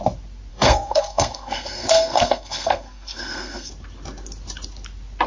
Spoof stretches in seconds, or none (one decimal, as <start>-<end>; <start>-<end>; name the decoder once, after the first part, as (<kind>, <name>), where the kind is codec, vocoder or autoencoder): 0.5-3.7 (codec, SNAC)